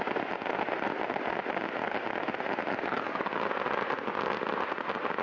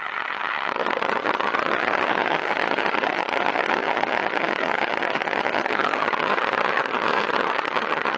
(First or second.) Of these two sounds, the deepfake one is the second